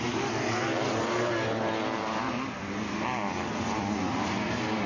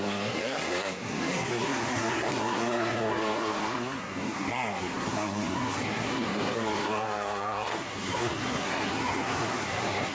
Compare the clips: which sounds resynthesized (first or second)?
second